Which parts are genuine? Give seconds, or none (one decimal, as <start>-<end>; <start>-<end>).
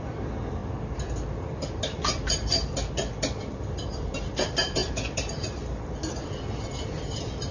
0.0-7.5